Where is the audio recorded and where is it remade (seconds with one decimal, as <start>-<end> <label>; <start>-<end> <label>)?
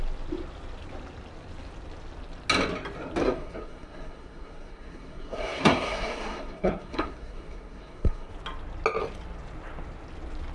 0.0-3.2 recorded; 3.2-8.3 remade; 8.3-10.5 recorded